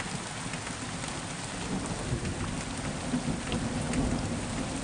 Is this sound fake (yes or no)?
no